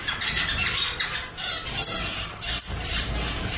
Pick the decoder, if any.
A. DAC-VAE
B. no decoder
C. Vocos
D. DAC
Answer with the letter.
B